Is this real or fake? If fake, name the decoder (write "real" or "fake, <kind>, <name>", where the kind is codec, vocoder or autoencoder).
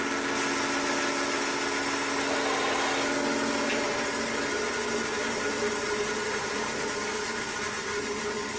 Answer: real